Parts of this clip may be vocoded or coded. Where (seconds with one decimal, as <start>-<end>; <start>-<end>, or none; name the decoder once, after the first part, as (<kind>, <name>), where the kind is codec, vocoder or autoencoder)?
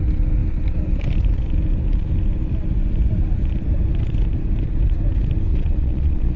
5.5-6.4 (vocoder, Vocos)